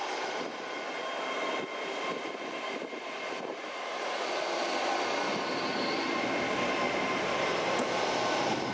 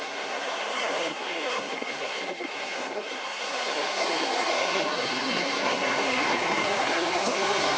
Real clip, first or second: first